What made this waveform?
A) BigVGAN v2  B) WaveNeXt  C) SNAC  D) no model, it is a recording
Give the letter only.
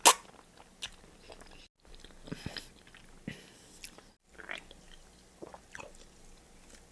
D